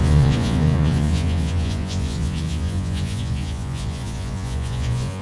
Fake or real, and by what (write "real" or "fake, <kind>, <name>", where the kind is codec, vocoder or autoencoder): fake, vocoder, Vocos